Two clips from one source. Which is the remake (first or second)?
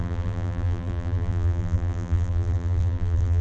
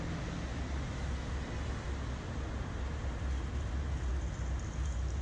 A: first